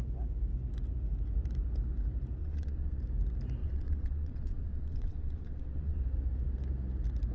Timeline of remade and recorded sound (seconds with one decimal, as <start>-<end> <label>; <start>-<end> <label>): 0.0-2.4 recorded; 2.4-3.0 remade; 3.0-3.6 recorded; 3.6-6.0 remade; 6.0-7.3 recorded